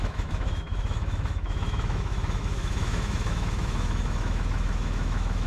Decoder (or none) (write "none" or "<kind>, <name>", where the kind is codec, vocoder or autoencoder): autoencoder, DAC-VAE